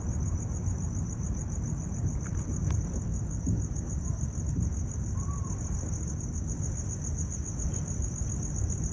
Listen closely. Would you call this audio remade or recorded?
recorded